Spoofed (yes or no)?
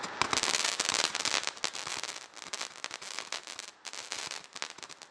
no